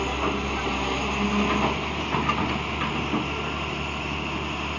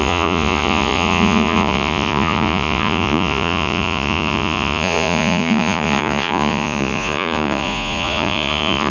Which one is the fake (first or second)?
second